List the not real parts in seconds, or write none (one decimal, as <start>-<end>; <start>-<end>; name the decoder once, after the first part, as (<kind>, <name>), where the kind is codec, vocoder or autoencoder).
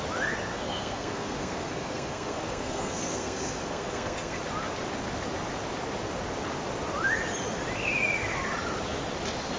0.5-4.4 (codec, SNAC)